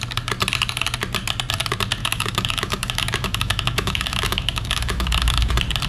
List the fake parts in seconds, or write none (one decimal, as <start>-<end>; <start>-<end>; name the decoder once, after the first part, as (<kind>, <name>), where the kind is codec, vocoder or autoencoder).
2.0-5.5 (autoencoder, DAC-VAE)